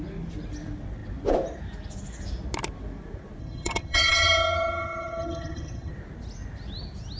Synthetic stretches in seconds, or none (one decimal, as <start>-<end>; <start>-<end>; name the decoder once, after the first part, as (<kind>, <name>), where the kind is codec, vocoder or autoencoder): 3.4-5.9 (vocoder, HiFi-GAN)

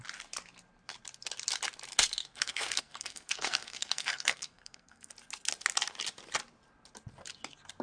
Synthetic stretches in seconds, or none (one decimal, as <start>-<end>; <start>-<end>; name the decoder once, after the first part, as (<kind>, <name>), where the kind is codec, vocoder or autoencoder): 2.2-5.1 (codec, SNAC)

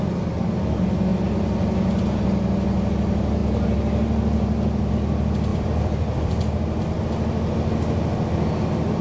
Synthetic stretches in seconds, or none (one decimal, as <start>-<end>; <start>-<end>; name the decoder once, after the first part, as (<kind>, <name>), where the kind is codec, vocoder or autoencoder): 5.5-6.8 (vocoder, BigVGAN v2)

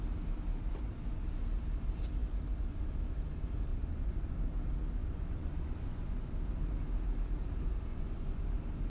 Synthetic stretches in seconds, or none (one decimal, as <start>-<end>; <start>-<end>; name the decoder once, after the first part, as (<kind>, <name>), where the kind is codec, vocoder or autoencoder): 3.7-4.4 (vocoder, Vocos); 5.0-6.3; 7.9-8.4

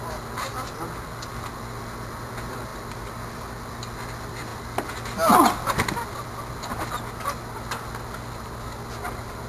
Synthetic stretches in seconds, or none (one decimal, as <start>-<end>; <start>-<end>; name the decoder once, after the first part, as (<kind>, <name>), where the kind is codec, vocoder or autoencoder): none

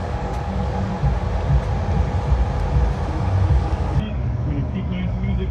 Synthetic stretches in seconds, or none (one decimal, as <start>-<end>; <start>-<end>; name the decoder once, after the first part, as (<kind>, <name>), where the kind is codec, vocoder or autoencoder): 0.0-0.9 (codec, DAC); 3.5-5.5

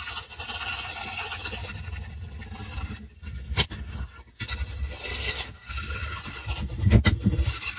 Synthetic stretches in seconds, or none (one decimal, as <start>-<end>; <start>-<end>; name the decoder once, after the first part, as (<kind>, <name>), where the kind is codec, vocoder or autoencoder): 5.1-5.7 (codec, SNAC)